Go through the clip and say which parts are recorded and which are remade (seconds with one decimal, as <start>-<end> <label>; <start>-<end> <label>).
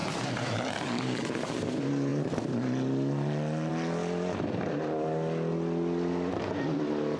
0.0-0.7 remade; 0.7-7.2 recorded